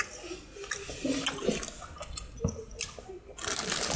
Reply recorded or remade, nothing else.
recorded